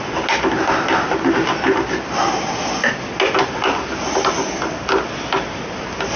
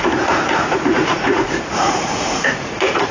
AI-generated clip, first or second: second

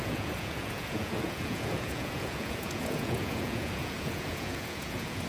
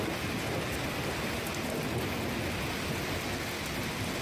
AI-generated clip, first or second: first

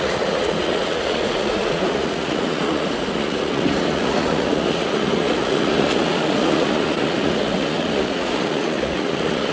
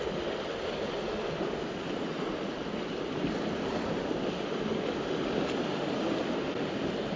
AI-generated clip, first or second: first